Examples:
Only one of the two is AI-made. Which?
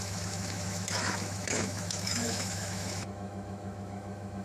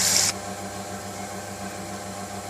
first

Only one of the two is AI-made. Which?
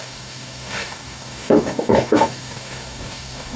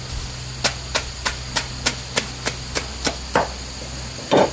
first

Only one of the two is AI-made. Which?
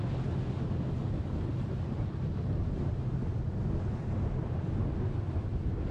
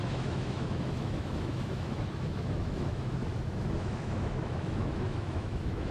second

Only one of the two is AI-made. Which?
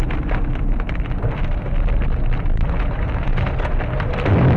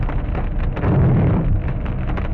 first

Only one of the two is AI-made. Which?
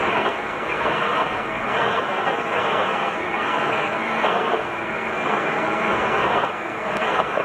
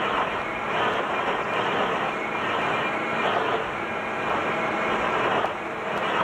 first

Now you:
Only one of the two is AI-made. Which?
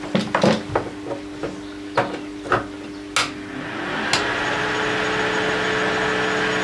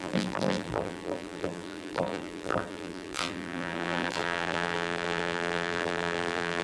second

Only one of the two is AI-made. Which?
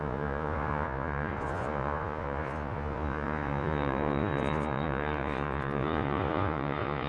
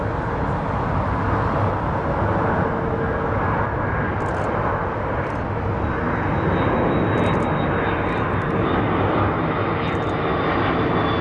first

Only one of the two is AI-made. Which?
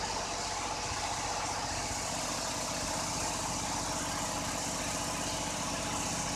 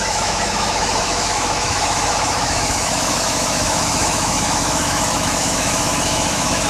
second